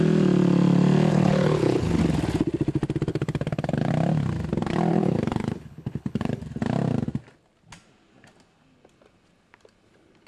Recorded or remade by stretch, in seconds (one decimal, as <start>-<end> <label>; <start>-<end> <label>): 0.0-1.1 recorded; 1.1-2.0 remade; 2.0-3.1 recorded; 3.1-3.9 remade; 3.9-4.9 recorded; 4.9-6.4 remade; 6.4-10.3 recorded